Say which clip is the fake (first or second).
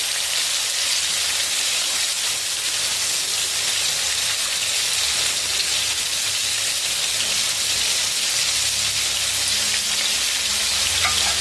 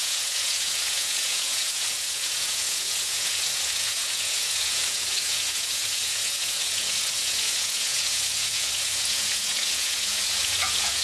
second